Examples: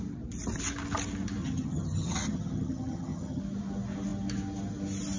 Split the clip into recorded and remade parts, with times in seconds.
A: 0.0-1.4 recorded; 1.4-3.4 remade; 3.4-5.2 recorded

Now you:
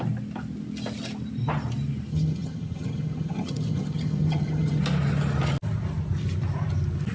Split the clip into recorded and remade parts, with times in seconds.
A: 0.0-2.1 recorded; 2.1-4.8 remade; 4.8-7.1 recorded

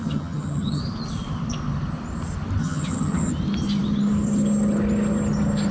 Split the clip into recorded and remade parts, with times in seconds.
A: 0.0-0.8 remade; 0.8-2.6 recorded; 2.6-3.3 remade; 3.3-5.7 recorded